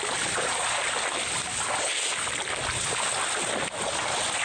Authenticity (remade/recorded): recorded